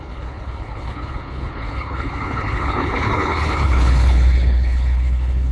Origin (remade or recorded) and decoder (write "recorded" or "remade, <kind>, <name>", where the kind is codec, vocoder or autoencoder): remade, codec, HILCodec